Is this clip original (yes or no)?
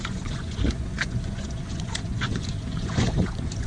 no